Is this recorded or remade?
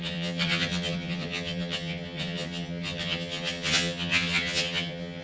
remade